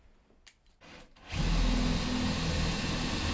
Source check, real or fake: real